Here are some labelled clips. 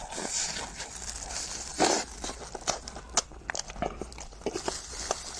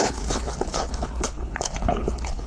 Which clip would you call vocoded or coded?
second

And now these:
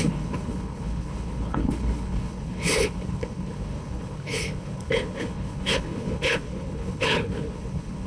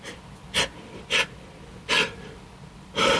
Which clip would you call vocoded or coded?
first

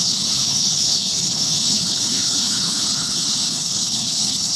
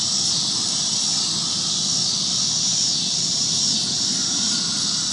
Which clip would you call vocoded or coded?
first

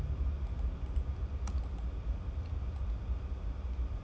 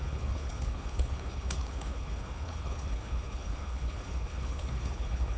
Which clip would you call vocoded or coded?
second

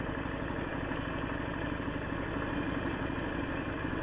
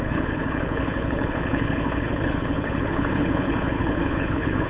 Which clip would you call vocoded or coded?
second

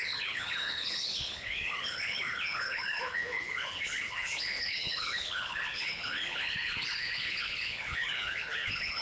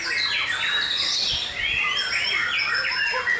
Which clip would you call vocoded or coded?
first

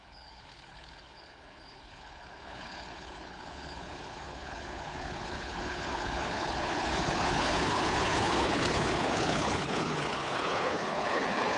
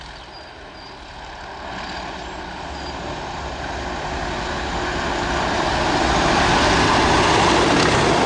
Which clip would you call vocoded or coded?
first